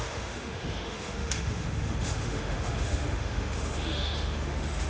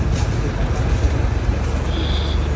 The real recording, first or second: second